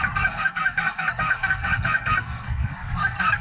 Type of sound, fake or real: fake